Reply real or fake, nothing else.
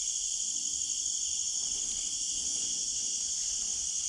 real